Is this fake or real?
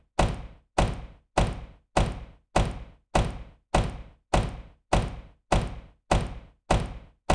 real